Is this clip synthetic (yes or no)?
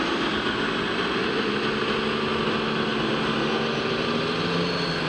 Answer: no